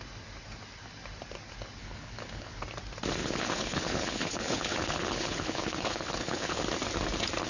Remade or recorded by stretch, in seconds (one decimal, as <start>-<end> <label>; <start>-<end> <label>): 0.0-1.8 recorded; 1.8-2.6 remade; 2.6-3.2 recorded; 3.2-6.6 remade; 6.6-7.5 recorded